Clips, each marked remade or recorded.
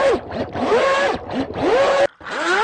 recorded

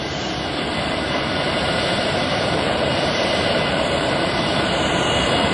remade